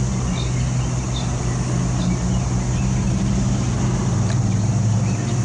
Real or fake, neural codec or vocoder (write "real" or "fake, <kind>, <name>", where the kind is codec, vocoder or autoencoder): real